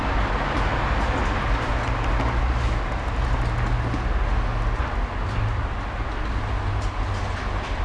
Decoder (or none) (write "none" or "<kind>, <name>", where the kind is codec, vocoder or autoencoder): none